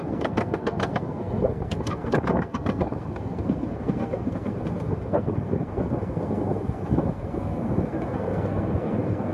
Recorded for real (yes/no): no